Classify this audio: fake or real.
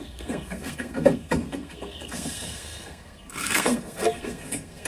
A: fake